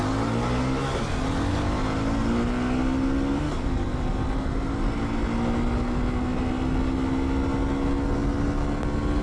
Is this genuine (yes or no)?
yes